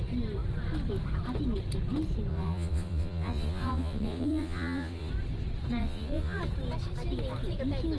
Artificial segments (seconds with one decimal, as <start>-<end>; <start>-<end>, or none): 2.3-5.1; 5.8-6.4